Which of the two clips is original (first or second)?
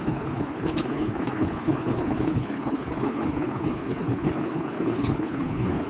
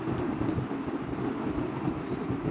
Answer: second